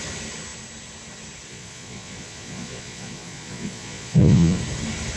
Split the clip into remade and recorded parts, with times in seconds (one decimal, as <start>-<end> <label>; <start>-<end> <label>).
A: 0.0-1.5 recorded; 1.5-4.6 remade; 4.6-5.2 recorded